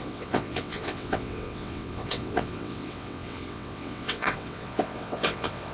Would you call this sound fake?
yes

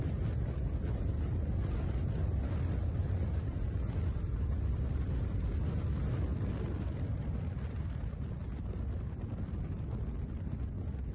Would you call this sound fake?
no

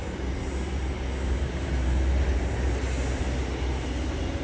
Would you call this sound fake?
no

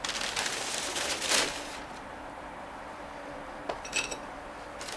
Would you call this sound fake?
no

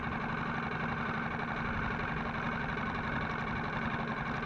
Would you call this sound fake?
no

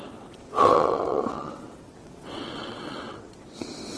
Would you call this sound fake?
yes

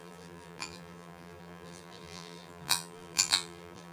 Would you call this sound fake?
yes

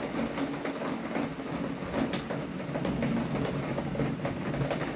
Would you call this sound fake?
no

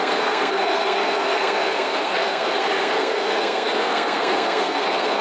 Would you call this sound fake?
yes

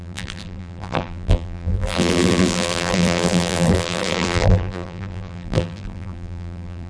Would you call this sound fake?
yes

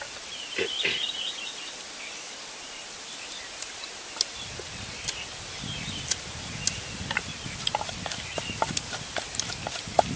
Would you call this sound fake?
no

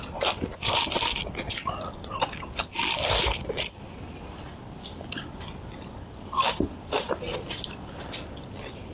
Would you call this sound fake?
no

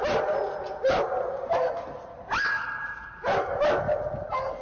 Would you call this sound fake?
no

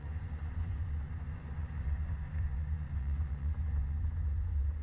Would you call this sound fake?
yes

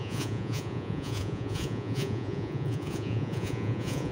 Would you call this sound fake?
yes